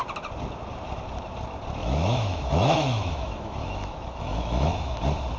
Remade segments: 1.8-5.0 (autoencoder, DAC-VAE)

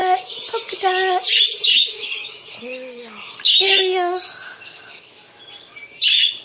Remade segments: 1.7-5.5 (autoencoder, DAC-VAE)

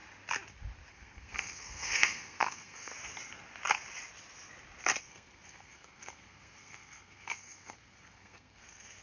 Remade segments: 0.9-2.9 (codec, SNAC); 5.0-9.0

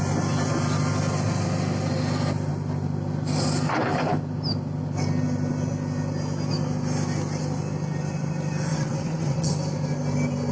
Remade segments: 8.7-9.5 (vocoder, WaveNeXt)

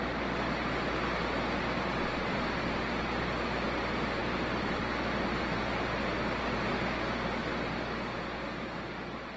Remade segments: none

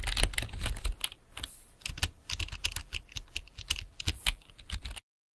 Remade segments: 2.8-4.5 (vocoder, BigVGAN v2)